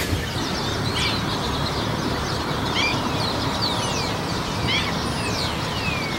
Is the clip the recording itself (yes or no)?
no